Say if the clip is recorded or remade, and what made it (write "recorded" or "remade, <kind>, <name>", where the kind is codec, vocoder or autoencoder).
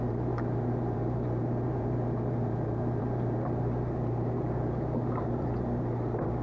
remade, vocoder, BigVGAN v2